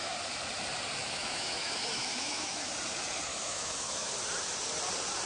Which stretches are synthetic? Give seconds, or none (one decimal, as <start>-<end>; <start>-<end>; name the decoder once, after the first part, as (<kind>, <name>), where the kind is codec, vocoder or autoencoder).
1.0-2.7 (autoencoder, DAC-VAE); 3.3-4.1